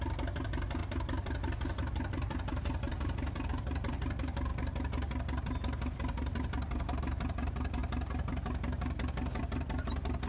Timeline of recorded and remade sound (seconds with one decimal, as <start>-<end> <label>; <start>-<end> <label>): 0.0-4.5 remade; 4.5-7.0 recorded; 7.0-7.8 remade; 7.8-9.4 recorded; 9.4-10.3 remade